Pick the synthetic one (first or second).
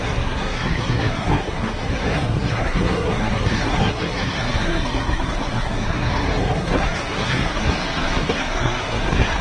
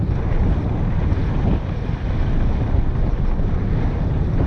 first